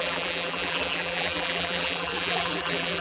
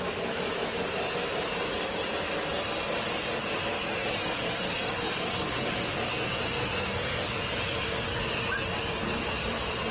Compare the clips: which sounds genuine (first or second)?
second